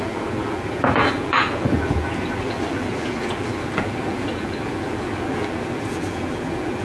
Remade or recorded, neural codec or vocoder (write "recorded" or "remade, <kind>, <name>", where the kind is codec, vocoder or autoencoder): remade, vocoder, BigVGAN v2